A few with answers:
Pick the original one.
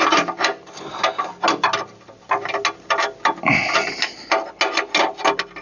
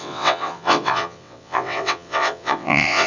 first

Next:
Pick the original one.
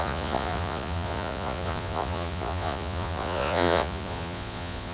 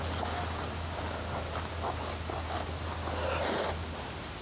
second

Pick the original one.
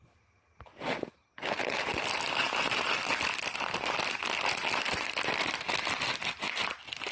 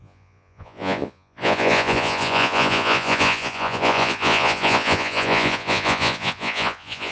first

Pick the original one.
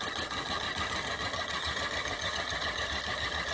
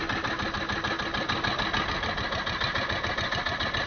second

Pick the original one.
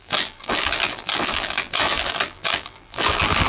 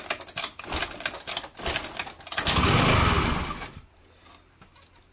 second